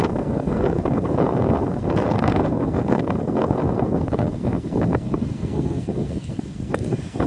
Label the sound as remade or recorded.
remade